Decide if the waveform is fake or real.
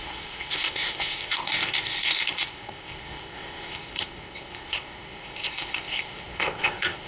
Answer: fake